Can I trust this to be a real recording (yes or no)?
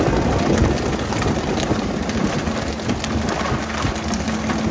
yes